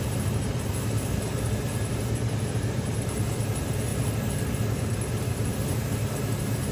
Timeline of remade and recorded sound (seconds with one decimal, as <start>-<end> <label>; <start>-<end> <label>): 0.0-3.9 remade; 3.9-5.2 recorded; 5.2-6.7 remade